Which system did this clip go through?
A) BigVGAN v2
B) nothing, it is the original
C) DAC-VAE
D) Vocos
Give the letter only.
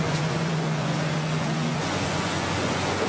D